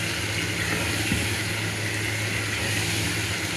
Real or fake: real